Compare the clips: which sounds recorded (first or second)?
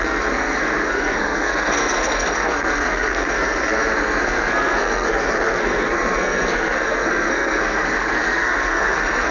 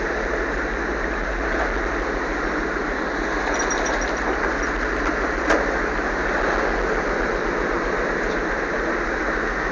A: second